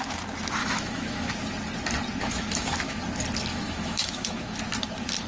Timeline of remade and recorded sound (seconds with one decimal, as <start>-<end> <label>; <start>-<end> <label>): 0.0-0.6 recorded; 0.6-1.3 remade; 1.3-2.2 recorded; 2.2-3.0 remade; 3.0-3.5 recorded; 3.5-4.6 remade; 4.6-5.3 recorded